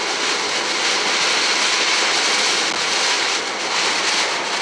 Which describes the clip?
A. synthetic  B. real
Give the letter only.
B